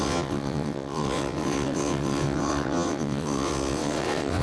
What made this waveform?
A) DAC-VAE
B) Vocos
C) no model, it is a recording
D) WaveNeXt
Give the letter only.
D